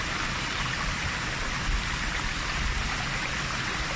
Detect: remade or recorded recorded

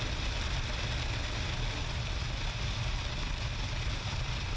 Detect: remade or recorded recorded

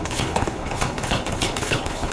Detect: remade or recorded remade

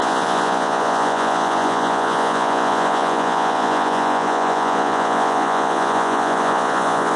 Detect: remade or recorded remade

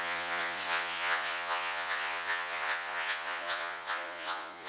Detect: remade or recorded remade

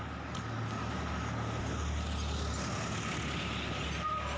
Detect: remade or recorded recorded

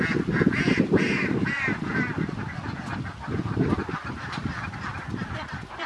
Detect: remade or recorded remade